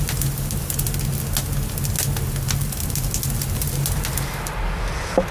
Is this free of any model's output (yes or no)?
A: yes